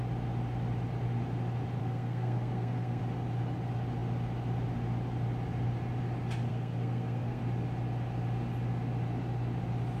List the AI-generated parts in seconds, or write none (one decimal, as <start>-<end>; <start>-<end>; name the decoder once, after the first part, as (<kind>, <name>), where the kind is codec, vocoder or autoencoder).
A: 1.8-3.0 (codec, SNAC); 6.5-7.4